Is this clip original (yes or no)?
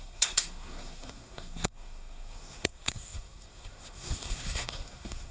no